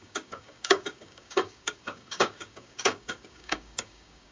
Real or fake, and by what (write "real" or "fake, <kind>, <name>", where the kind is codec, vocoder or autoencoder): fake, codec, DAC